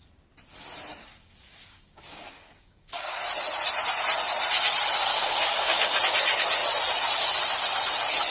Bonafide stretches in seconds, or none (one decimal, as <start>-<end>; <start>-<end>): 0.0-0.9; 3.2-5.1; 6.0-8.3